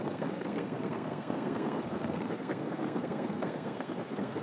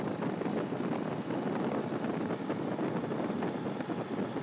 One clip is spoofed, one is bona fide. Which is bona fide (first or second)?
second